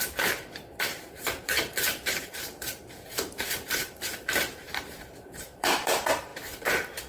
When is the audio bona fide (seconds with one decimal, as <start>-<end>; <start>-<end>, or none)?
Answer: none